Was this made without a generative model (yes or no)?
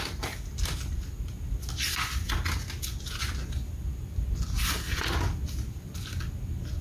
yes